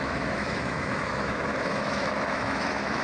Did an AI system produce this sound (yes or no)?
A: yes